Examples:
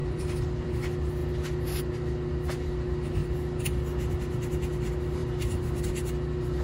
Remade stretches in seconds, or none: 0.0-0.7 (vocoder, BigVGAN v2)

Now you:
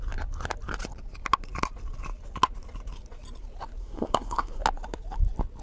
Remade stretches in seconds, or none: 3.8-4.6 (codec, SNAC)

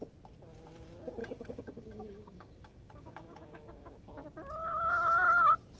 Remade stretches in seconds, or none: 1.2-4.1 (codec, DAC)

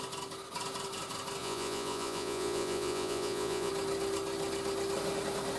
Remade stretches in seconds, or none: 1.4-3.7 (vocoder, Vocos)

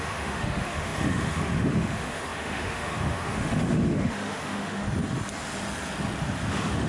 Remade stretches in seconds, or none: 0.0-4.8 (autoencoder, DAC-VAE); 6.5-6.9

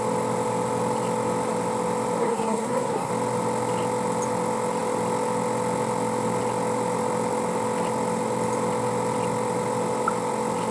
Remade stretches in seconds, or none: 2.2-3.1 (codec, SNAC)

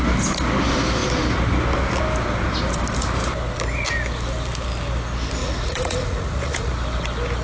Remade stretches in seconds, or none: 5.4-6.7 (vocoder, Vocos)